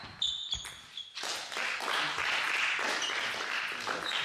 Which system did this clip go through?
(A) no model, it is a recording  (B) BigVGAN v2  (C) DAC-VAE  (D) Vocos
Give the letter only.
A